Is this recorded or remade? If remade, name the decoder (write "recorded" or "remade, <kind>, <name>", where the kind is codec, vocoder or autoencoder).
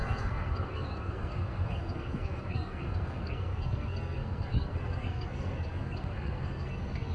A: remade, codec, SNAC